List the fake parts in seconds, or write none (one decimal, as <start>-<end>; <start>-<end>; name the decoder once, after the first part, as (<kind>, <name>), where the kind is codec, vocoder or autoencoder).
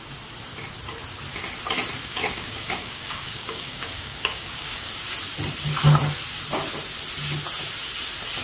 2.0-4.9 (codec, DAC)